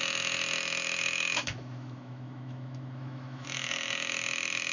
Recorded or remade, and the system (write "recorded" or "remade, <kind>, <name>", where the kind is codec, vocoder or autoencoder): remade, autoencoder, DAC-VAE